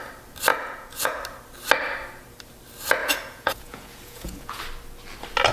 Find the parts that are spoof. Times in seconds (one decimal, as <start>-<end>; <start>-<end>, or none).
0.5-1.2; 3.0-4.6